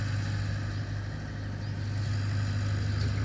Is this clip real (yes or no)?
yes